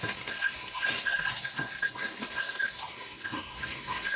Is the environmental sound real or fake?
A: fake